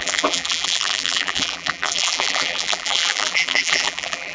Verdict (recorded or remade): remade